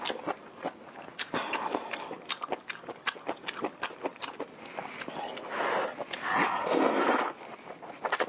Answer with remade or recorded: recorded